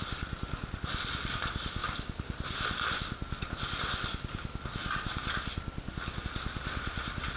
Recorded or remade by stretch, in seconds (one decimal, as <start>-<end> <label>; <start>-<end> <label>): 0.0-1.8 remade; 1.8-6.2 recorded; 6.2-7.4 remade